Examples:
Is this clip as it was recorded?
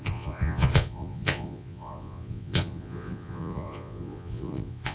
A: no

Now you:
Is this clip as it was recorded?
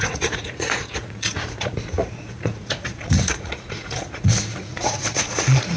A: no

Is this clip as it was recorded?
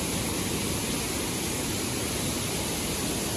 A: yes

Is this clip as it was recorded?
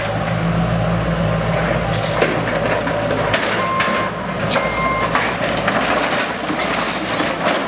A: yes